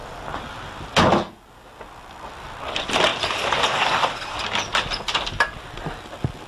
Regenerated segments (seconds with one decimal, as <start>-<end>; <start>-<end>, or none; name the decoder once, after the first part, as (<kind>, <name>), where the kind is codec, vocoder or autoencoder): none